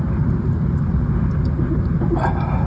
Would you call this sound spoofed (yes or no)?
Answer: no